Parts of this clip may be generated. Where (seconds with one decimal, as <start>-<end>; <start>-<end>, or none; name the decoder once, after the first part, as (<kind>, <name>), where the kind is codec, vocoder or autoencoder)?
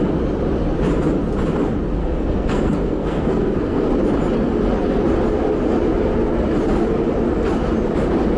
2.0-3.9 (codec, SNAC)